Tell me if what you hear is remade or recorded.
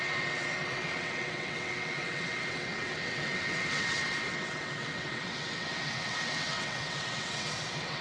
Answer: remade